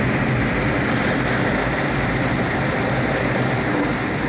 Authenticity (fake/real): real